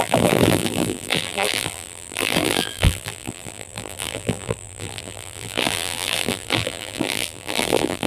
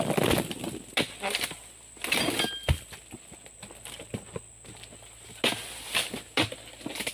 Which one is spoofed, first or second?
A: first